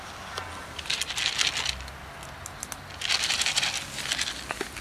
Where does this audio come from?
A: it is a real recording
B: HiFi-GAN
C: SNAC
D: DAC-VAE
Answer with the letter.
A